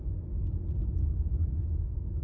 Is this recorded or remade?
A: recorded